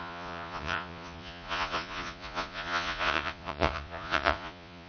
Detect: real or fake fake